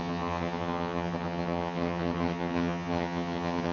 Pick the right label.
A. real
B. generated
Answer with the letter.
B